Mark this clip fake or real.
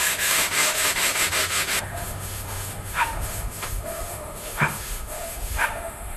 fake